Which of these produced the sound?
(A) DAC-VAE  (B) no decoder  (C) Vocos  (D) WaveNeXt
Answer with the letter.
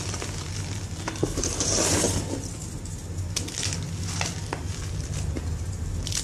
B